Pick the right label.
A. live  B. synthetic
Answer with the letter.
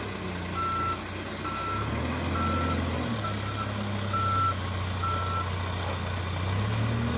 A